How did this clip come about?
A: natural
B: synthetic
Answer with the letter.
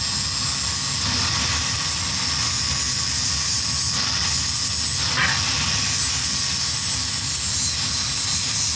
A